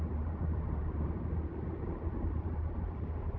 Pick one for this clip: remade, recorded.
recorded